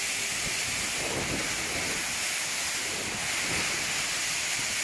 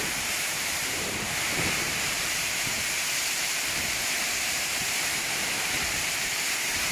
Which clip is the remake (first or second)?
second